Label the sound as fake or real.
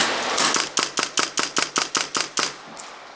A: real